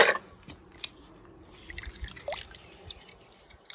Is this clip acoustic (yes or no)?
yes